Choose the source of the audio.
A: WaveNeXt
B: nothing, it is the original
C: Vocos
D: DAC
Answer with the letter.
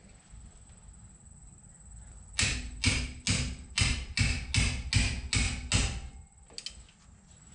B